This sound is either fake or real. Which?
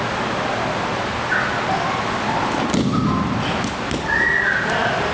real